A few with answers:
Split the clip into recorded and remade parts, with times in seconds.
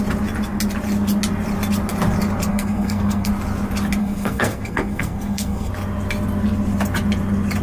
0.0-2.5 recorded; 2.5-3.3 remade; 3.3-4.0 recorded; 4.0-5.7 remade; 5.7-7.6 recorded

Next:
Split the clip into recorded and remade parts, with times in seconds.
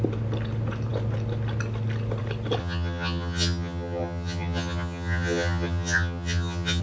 0.0-2.6 recorded; 2.6-6.8 remade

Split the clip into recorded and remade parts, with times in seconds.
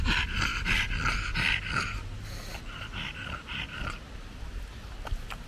0.0-5.5 recorded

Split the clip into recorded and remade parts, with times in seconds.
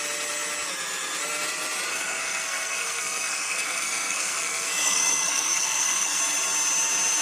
0.0-1.9 recorded; 1.9-6.2 remade; 6.2-7.2 recorded